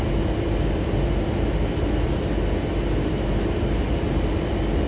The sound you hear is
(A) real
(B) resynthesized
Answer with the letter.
A